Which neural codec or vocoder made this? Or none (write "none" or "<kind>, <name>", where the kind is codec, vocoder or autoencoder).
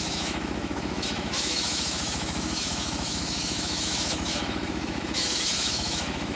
autoencoder, DAC-VAE